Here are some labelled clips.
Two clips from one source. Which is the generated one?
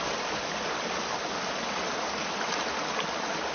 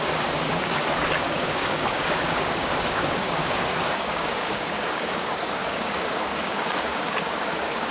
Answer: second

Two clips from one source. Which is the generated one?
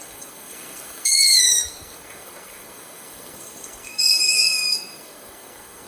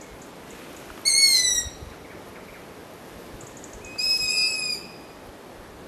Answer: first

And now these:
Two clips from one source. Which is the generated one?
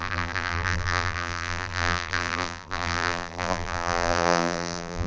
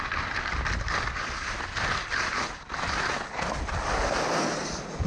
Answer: first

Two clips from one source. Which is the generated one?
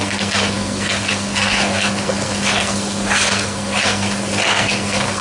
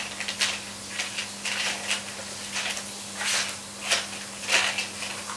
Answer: first